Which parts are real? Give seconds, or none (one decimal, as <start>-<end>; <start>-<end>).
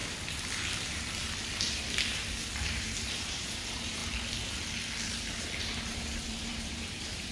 0.0-2.6; 4.0-5.6